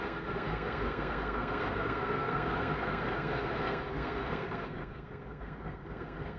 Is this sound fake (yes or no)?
yes